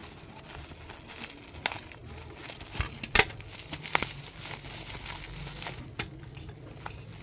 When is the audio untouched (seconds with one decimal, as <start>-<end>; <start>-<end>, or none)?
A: 0.0-7.2